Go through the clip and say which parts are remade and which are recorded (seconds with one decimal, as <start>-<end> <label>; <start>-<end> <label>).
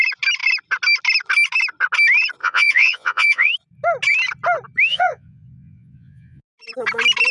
0.0-2.4 recorded; 2.4-3.5 remade; 3.5-4.9 recorded; 4.9-6.4 remade; 6.4-7.3 recorded